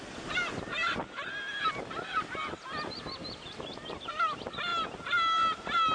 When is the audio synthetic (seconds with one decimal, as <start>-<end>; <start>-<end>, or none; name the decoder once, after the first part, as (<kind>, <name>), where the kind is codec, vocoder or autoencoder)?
none